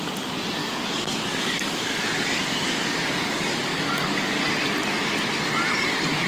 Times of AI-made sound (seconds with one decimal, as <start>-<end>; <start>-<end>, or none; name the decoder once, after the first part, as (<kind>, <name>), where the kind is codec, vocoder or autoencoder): 0.6-4.4 (codec, DAC)